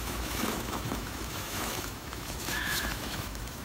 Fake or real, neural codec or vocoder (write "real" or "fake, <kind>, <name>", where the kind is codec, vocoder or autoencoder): fake, autoencoder, DAC-VAE